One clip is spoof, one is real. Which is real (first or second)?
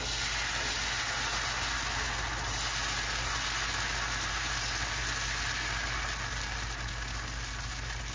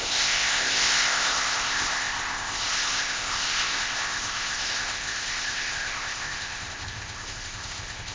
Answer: first